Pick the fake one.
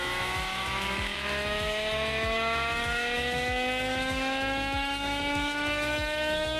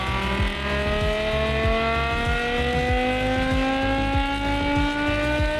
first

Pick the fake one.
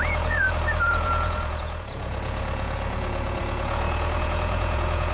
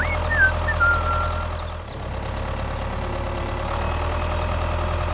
first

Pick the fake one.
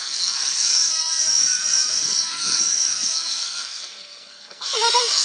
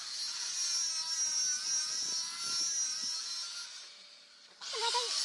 first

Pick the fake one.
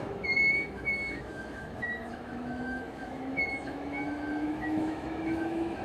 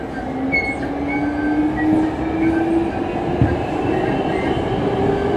first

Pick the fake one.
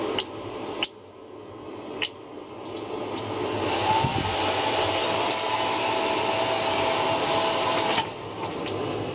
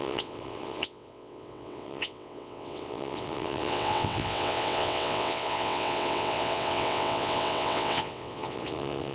second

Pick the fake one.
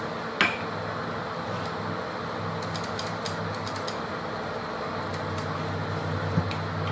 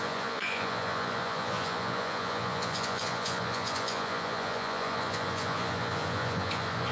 second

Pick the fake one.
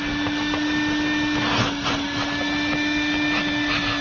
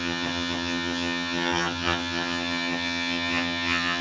second